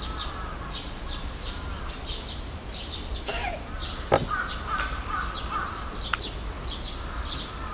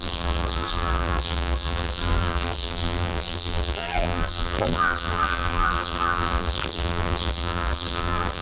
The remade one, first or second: second